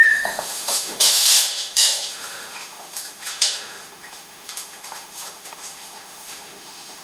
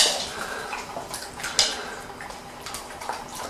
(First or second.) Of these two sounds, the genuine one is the second